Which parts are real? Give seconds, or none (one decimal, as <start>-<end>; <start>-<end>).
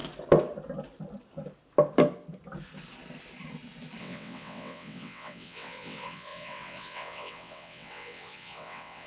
0.0-4.0